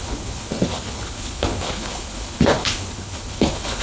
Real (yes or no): no